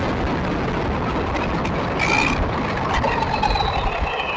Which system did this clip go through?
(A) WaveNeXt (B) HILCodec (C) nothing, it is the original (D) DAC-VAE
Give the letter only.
C